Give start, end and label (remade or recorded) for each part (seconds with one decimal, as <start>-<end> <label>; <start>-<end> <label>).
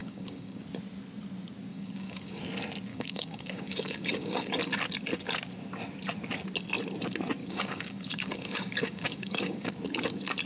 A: 0.0-0.6 remade; 0.6-1.7 recorded; 1.7-2.4 remade; 2.4-2.9 recorded; 2.9-4.5 remade; 4.5-7.4 recorded; 7.4-9.7 remade; 9.7-10.5 recorded